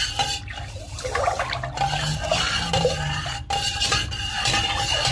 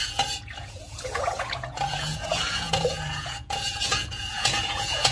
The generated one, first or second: second